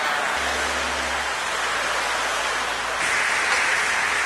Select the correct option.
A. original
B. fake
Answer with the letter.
A